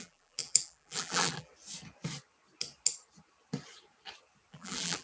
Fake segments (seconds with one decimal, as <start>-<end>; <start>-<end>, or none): 0.0-1.5; 4.5-5.0